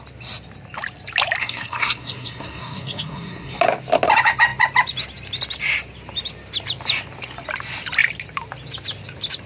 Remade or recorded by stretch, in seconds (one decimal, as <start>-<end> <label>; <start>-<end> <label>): 0.0-1.4 recorded; 1.4-3.6 remade; 3.6-9.5 recorded